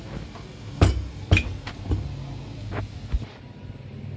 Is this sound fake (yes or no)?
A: no